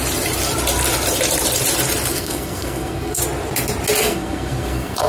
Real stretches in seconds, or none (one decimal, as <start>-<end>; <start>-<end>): 0.0-2.1; 3.2-4.0